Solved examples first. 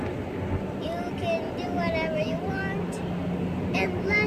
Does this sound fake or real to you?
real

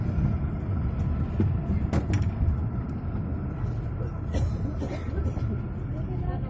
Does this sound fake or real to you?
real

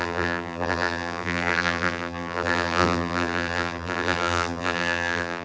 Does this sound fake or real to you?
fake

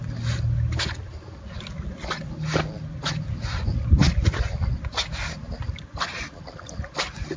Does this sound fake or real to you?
real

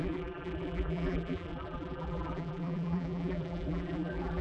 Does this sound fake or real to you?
fake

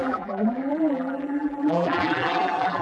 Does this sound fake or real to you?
fake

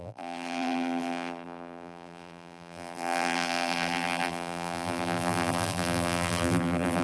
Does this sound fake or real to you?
fake